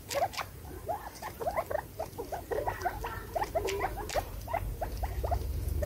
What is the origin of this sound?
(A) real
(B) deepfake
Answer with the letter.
B